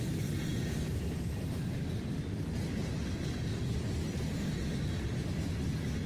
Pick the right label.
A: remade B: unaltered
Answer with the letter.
B